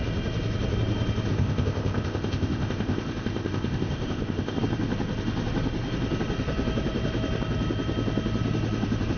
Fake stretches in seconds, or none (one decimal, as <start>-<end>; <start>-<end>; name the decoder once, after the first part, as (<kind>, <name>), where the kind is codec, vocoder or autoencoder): 1.3-4.6 (codec, ZipCodec)